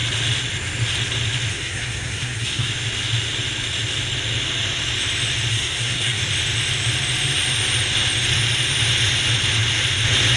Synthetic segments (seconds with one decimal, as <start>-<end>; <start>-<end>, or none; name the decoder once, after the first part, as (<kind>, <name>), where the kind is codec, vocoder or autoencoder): 1.5-2.7 (codec, SNAC); 5.5-6.2